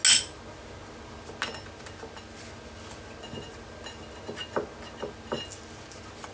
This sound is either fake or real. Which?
real